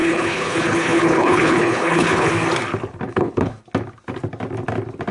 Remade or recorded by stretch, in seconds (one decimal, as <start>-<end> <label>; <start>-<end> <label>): 0.0-2.3 remade; 2.3-3.1 recorded; 3.1-3.6 remade; 3.6-5.1 recorded